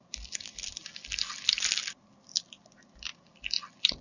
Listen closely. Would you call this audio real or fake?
real